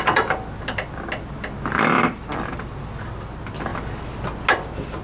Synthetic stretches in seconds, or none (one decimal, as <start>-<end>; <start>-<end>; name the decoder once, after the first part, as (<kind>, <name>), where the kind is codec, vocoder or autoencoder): none